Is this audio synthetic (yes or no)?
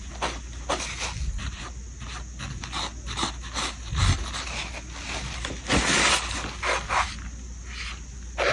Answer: no